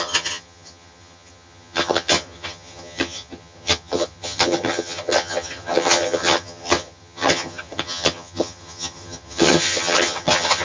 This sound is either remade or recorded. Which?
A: remade